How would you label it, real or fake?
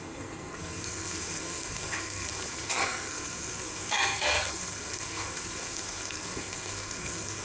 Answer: fake